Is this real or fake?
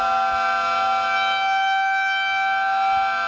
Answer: real